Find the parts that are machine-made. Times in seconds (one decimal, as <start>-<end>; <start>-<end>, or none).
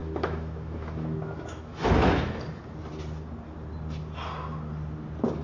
0.0-2.4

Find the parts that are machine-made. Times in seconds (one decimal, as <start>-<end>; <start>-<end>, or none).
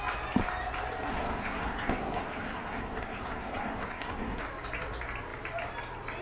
1.1-4.4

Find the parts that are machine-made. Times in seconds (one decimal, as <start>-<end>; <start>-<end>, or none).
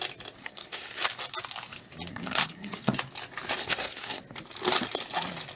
0.4-1.0; 2.1-2.9; 3.6-4.2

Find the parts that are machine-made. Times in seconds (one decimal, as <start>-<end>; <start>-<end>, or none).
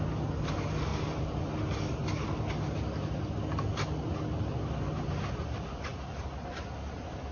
none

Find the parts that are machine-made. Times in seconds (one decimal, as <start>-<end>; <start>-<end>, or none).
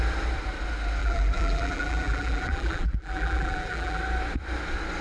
1.0-4.0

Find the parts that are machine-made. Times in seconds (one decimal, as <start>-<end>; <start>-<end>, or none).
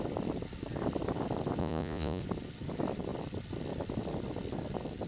1.6-2.2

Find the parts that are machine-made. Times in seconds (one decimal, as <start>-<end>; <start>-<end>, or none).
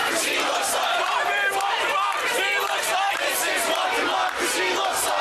0.0-4.2